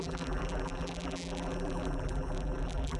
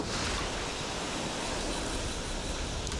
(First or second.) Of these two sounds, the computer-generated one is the first